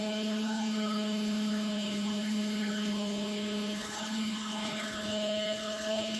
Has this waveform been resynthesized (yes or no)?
yes